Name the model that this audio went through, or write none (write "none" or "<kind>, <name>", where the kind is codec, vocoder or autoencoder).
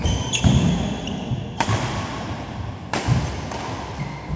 none